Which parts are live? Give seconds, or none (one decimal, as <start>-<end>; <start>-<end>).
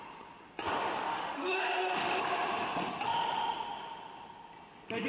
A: 0.0-1.1; 2.2-5.1